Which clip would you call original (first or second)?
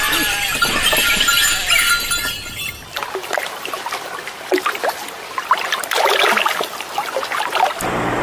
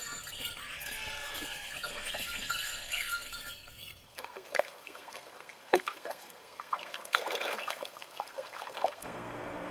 first